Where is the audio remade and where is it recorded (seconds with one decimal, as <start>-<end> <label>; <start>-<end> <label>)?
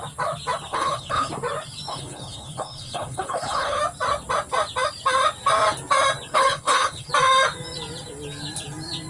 0.0-0.7 recorded; 0.7-1.3 remade; 1.3-1.9 recorded; 1.9-3.8 remade; 3.8-6.3 recorded; 6.3-7.1 remade; 7.1-9.1 recorded